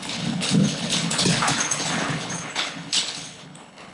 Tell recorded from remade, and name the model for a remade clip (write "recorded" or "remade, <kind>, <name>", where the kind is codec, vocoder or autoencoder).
remade, codec, HILCodec